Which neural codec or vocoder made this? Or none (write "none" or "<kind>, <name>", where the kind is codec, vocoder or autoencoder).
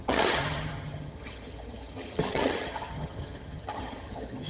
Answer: vocoder, HiFi-GAN